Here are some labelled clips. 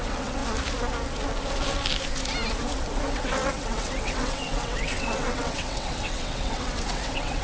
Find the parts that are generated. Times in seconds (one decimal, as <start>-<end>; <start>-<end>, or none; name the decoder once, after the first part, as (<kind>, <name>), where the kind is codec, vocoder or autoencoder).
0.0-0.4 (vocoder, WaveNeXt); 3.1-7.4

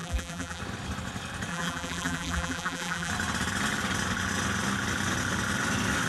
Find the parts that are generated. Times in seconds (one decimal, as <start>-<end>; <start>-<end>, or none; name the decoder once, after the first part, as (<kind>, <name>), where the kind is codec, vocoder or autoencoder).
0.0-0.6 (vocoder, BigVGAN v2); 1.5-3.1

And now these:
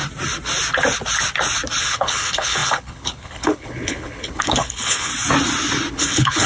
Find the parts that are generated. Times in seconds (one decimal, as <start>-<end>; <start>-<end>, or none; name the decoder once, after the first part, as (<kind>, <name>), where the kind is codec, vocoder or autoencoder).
1.8-5.1 (codec, HILCodec); 5.9-6.5

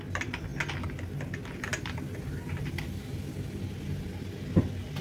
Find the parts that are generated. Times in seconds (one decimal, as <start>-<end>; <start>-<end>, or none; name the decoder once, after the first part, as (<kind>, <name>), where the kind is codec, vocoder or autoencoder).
none